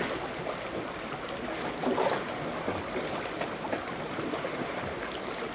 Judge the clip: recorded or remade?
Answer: recorded